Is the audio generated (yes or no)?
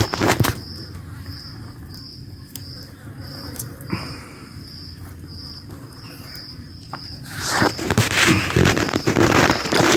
yes